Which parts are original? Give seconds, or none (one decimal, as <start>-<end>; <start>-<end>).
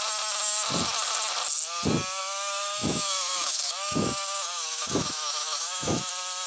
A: 0.0-2.2; 6.1-6.5